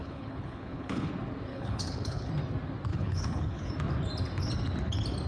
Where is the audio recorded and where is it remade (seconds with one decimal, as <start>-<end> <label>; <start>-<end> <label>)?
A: 0.0-1.1 remade; 1.1-1.5 recorded; 1.5-2.3 remade; 2.3-2.9 recorded; 2.9-3.7 remade; 3.7-5.3 recorded